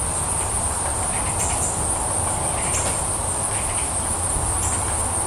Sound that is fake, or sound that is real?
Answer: real